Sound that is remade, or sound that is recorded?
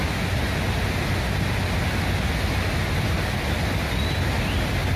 recorded